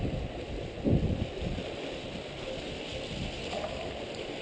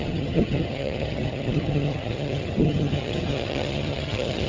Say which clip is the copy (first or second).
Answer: second